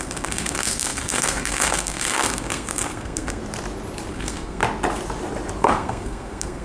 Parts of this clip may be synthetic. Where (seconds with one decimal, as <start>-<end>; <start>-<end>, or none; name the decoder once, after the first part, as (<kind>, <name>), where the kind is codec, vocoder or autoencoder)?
0.0-3.4 (codec, SNAC); 4.1-4.6; 5.6-6.6